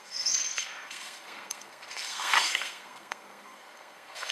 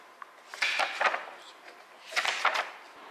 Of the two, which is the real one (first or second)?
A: second